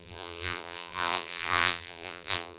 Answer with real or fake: fake